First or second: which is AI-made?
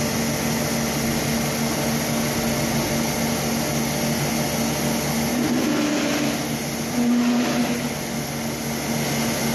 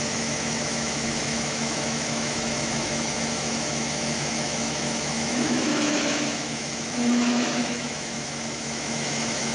second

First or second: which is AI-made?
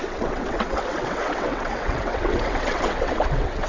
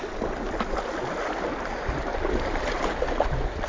first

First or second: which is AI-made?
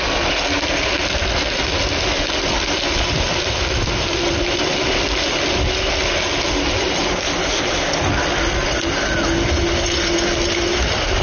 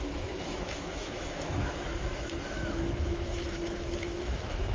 second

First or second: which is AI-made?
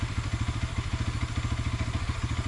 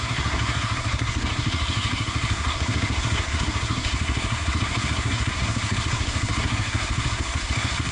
second